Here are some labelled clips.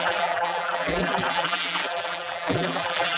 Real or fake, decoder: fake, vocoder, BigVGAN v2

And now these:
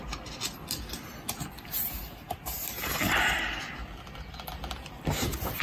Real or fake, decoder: real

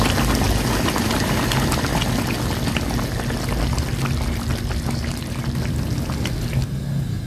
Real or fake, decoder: real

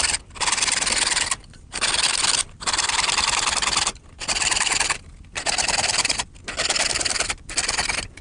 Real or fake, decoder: real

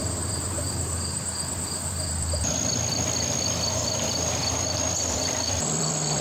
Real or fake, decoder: fake, vocoder, BigVGAN v2